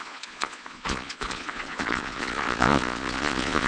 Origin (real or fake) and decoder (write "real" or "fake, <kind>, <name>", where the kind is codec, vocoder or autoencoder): fake, vocoder, Vocos